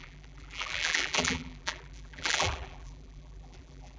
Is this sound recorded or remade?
remade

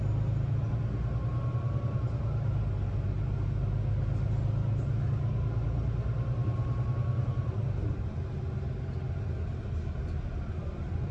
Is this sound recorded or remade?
recorded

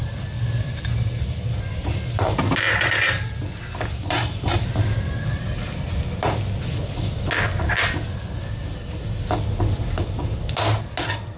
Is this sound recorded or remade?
recorded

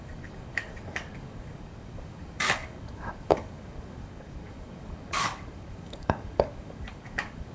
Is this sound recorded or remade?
remade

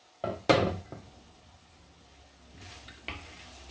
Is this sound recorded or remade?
recorded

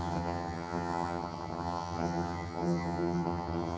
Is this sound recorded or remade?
remade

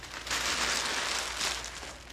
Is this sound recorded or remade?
recorded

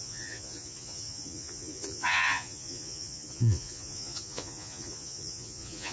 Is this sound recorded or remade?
remade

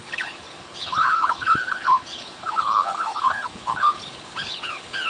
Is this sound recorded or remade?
remade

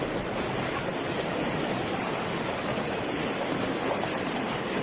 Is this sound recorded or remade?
recorded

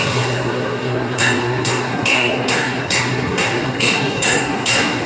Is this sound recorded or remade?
remade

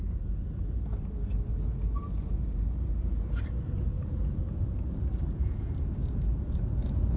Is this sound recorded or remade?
remade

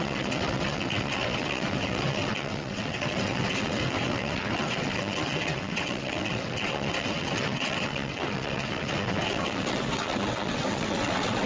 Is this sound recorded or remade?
remade